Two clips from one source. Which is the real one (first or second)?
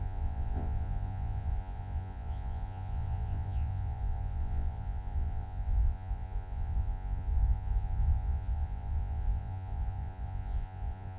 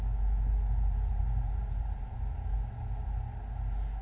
second